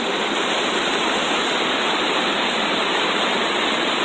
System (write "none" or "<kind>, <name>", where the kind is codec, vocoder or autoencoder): none